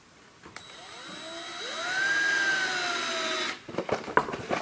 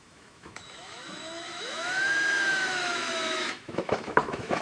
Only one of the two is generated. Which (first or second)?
second